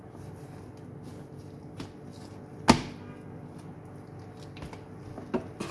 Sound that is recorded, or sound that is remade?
recorded